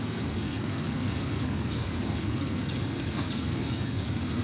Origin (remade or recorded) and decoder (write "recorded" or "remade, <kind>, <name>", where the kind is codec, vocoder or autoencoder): remade, codec, SNAC